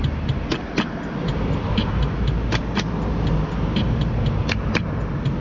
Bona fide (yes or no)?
yes